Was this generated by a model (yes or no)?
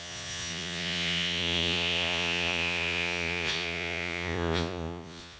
yes